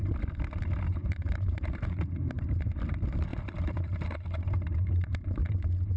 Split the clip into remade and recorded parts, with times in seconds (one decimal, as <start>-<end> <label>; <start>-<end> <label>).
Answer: 0.0-1.0 recorded; 1.0-2.7 remade; 2.7-3.3 recorded; 3.3-5.6 remade; 5.6-6.0 recorded